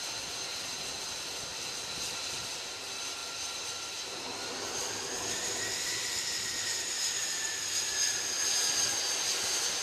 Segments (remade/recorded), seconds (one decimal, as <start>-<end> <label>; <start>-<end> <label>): 0.0-1.5 recorded; 1.5-2.5 remade; 2.5-3.2 recorded; 3.2-7.1 remade; 7.1-9.8 recorded